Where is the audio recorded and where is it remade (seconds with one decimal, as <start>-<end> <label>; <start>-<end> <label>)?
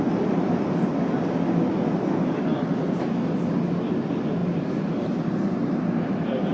0.0-6.5 recorded